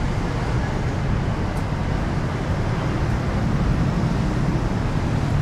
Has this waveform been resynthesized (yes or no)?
no